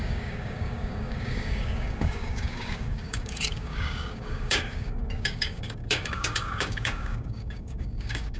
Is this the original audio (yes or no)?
no